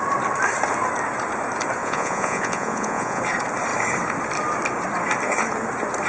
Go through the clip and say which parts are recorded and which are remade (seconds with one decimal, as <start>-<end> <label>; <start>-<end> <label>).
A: 0.0-1.8 recorded; 1.8-3.2 remade; 3.2-6.1 recorded